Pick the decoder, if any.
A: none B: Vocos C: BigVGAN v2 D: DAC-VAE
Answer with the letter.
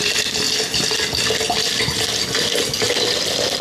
A